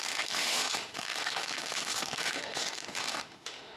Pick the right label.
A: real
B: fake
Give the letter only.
B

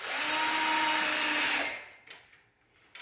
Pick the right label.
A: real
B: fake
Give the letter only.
A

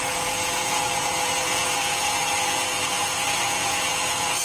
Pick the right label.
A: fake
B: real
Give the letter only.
A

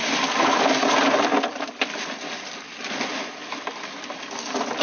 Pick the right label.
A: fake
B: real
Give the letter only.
B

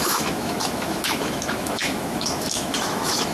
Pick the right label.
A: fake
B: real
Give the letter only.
A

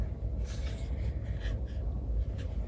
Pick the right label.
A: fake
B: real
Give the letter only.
B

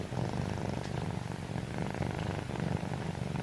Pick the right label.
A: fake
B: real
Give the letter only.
B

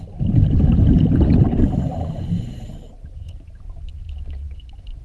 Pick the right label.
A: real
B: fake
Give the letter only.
A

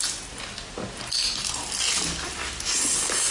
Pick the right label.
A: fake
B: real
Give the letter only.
B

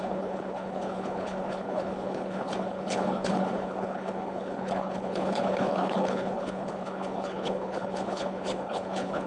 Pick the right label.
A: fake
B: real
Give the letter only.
A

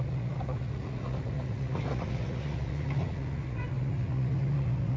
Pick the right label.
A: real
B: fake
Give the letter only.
B